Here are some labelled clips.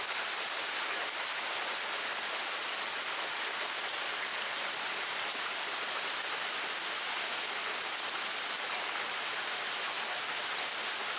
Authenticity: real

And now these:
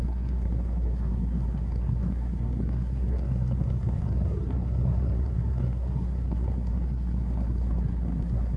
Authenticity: fake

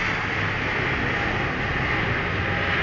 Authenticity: real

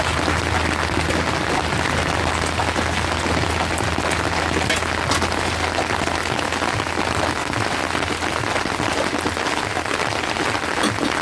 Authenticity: real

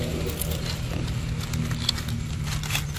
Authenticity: real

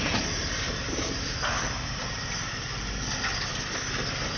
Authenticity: real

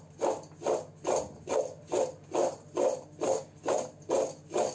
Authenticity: real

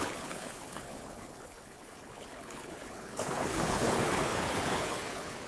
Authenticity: fake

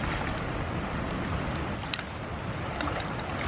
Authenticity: real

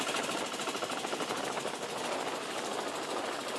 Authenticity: real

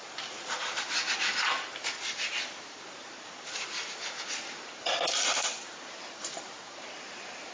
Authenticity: fake